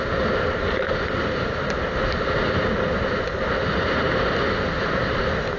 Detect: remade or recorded recorded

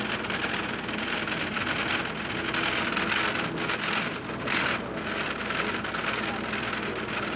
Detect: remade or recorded recorded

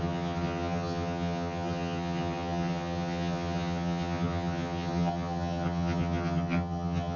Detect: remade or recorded remade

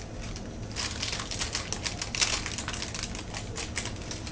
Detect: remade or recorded recorded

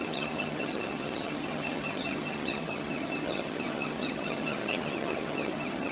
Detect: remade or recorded remade